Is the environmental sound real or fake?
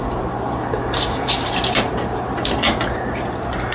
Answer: fake